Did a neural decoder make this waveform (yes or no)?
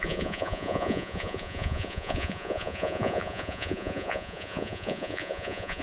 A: yes